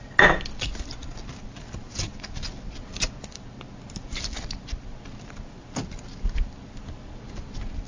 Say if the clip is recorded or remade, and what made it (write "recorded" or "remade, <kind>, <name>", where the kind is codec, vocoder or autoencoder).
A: recorded